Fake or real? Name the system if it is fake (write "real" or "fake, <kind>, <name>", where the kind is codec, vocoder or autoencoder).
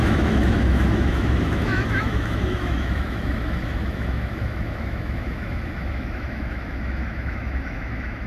fake, autoencoder, DAC-VAE